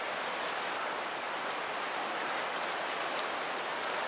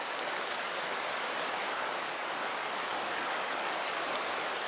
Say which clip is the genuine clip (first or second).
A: first